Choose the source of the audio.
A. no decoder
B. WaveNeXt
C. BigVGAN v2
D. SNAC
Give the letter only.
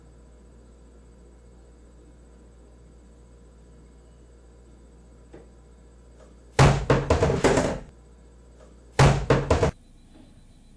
A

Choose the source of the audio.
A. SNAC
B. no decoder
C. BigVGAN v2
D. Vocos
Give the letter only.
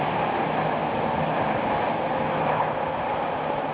B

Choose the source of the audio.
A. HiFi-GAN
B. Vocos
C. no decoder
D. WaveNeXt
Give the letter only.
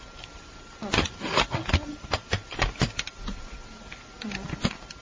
C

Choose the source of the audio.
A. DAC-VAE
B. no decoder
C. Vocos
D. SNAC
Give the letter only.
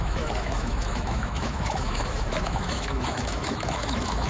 A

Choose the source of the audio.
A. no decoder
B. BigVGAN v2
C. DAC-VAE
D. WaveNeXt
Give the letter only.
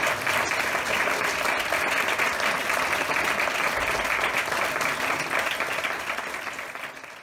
A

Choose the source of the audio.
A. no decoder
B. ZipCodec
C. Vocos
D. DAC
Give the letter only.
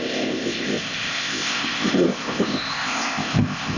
B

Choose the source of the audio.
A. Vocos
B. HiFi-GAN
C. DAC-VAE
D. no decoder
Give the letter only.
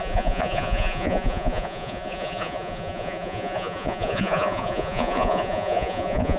A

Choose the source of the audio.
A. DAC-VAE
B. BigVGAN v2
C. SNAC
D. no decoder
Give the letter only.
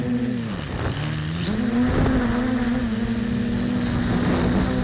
D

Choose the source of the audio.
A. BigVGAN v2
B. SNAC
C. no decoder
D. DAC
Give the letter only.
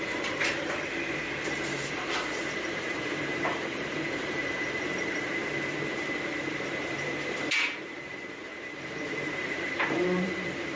A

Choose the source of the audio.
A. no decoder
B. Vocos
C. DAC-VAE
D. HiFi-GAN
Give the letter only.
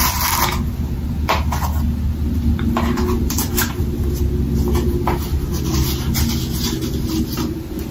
A